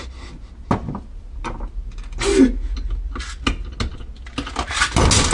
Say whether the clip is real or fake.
real